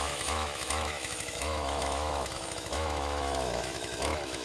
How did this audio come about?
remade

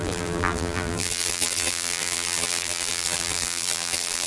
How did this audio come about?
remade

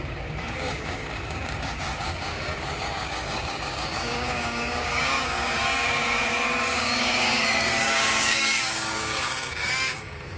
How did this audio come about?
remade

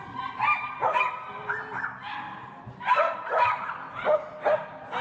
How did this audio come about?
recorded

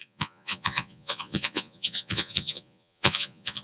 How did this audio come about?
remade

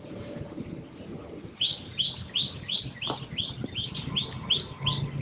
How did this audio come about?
recorded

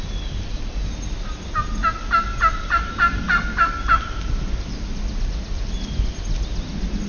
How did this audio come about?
recorded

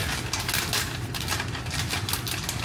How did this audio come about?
recorded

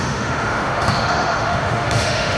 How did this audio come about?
remade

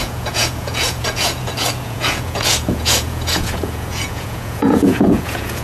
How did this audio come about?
remade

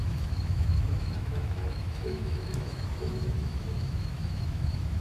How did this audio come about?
remade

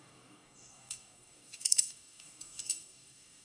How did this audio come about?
remade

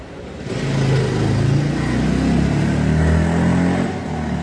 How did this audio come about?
recorded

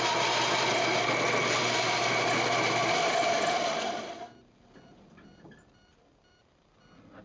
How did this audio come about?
recorded